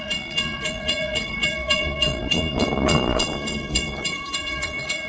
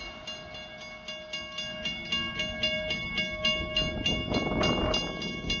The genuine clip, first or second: second